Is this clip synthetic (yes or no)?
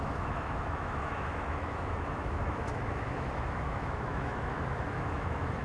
yes